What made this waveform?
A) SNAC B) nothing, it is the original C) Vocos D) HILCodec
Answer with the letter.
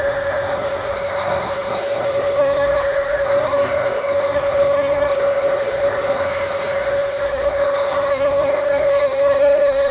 A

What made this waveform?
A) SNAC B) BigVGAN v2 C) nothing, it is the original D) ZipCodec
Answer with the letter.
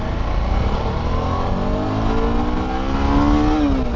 C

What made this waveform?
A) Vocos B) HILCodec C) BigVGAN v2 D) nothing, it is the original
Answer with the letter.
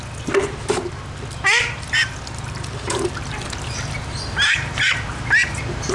D